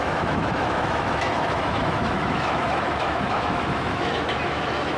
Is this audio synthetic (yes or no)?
yes